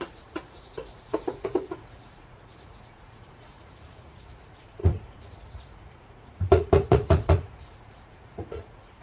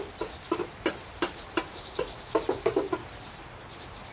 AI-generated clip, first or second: first